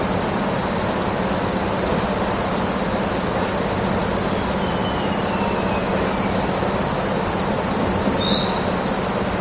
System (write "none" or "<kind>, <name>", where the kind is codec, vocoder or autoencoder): none